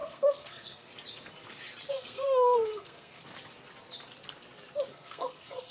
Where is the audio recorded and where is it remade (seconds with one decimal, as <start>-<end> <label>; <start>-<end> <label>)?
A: 0.0-0.9 remade; 0.9-1.9 recorded; 1.9-3.2 remade; 3.2-4.9 recorded; 4.9-5.7 remade